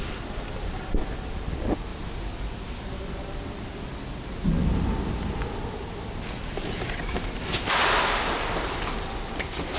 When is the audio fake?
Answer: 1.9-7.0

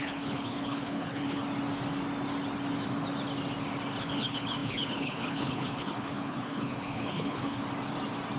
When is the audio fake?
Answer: 0.0-1.4; 4.0-7.6

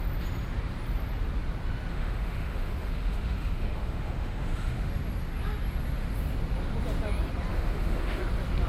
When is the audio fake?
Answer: 1.9-4.9; 7.5-8.2

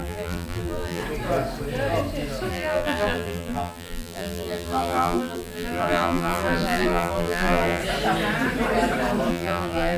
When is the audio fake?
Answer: 0.0-1.0; 2.5-7.8; 9.3-10.0

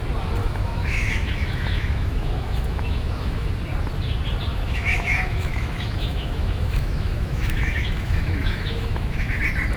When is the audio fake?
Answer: 0.4-3.5; 4.5-9.4